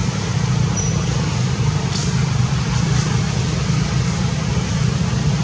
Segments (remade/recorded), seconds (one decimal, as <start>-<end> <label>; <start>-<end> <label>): 0.0-3.2 remade; 3.2-5.4 recorded